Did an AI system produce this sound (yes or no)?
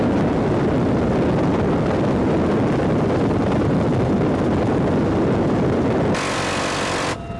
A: no